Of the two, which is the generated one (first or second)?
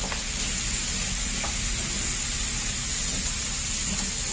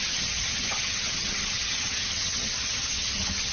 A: second